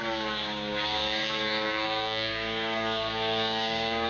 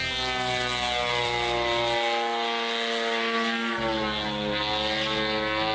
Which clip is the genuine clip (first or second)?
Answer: second